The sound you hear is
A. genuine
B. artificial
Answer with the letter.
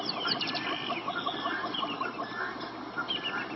A